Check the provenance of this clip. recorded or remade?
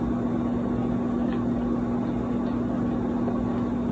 recorded